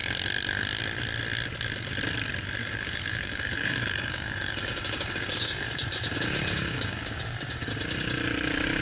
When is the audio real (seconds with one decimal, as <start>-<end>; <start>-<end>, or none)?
0.0-2.6; 7.7-8.8